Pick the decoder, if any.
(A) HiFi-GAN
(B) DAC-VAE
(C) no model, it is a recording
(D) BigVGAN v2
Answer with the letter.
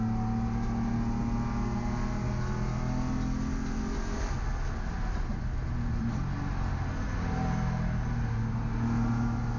C